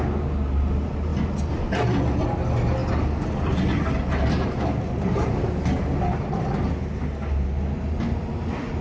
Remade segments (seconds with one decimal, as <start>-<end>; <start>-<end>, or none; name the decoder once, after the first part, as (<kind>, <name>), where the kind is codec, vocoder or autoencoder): none